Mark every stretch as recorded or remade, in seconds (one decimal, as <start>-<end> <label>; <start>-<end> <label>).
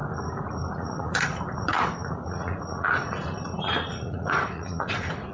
0.0-0.7 recorded; 0.7-5.3 remade